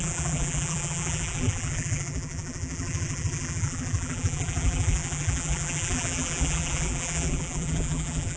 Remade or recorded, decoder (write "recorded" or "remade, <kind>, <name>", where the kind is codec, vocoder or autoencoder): remade, vocoder, BigVGAN v2